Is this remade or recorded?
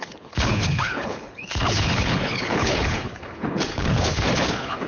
remade